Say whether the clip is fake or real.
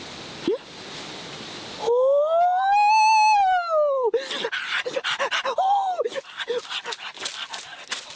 real